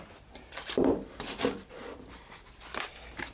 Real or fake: fake